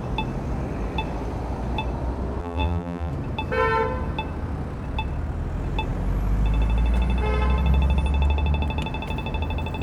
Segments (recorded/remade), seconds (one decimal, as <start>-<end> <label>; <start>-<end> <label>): 0.0-2.4 recorded; 2.4-3.1 remade; 3.1-9.8 recorded